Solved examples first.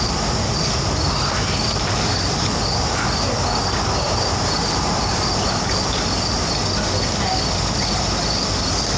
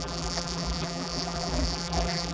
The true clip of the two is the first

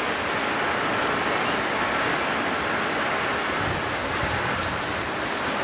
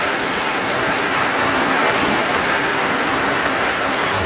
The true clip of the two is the first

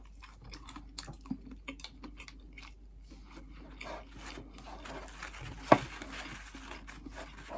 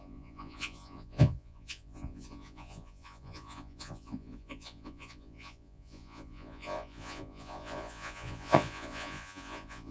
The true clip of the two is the first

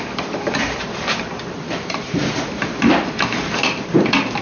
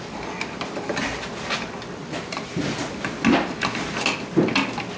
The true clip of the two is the second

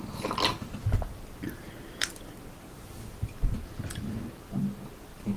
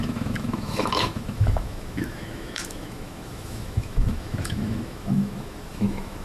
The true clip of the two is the first